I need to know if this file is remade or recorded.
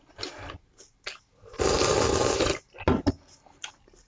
recorded